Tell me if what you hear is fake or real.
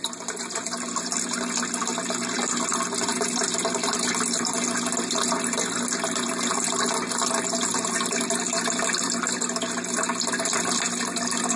real